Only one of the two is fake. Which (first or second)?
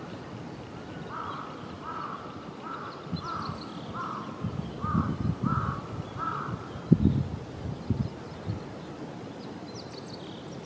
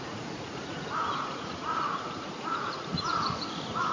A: second